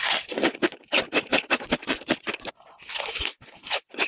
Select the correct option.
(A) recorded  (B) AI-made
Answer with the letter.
A